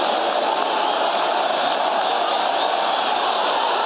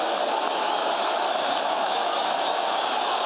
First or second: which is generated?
second